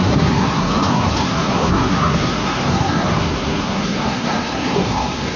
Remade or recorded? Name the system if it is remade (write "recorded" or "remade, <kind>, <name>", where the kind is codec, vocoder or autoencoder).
remade, codec, SNAC